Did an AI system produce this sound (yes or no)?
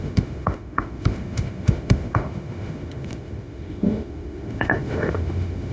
yes